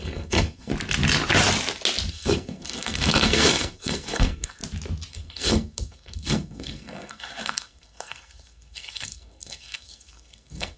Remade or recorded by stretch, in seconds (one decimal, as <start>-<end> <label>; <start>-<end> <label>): 0.0-0.7 remade; 0.7-2.1 recorded; 2.1-4.6 remade; 4.6-5.1 recorded; 5.1-10.8 remade